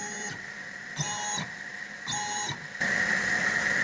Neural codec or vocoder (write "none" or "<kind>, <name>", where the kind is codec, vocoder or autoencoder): none